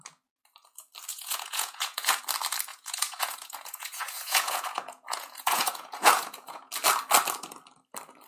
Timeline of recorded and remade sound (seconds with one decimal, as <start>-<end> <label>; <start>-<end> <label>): 0.0-1.1 recorded; 1.1-2.2 remade; 2.2-2.7 recorded; 2.7-6.7 remade; 6.7-8.3 recorded